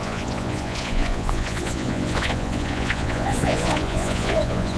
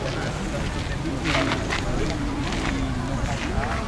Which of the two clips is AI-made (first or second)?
first